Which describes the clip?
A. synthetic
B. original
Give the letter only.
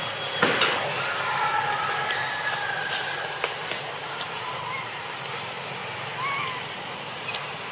B